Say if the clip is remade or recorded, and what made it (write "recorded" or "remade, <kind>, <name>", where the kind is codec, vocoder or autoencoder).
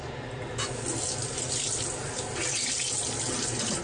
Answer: recorded